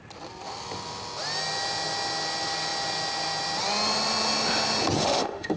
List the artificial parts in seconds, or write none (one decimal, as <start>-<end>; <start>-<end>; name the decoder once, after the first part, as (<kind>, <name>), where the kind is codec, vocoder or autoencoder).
5.0-5.6 (autoencoder, DAC-VAE)